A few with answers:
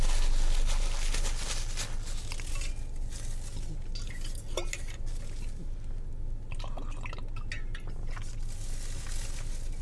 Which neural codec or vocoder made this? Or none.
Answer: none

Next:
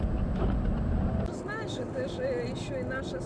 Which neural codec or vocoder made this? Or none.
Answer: none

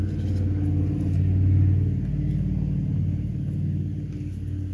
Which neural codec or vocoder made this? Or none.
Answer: none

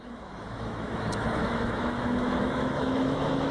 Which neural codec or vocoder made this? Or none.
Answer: autoencoder, DAC-VAE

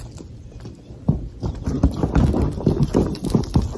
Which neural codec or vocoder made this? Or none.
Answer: none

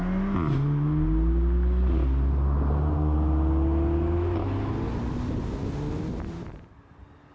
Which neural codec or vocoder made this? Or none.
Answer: none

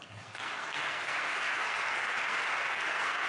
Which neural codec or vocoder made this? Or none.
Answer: codec, SNAC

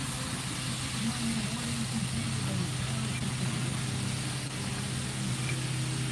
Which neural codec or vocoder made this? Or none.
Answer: none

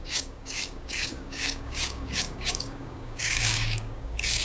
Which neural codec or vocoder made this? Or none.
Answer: codec, DAC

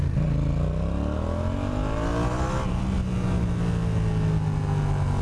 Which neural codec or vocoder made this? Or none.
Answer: none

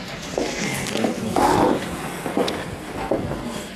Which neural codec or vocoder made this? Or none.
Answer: codec, SNAC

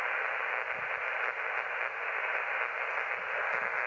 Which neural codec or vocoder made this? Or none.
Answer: none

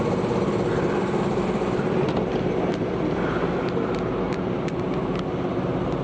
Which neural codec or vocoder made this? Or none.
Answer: none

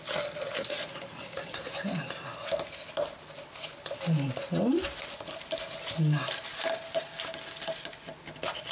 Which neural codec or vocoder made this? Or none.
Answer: none